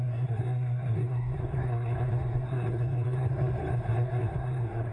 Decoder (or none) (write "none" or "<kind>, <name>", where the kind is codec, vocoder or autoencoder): codec, SNAC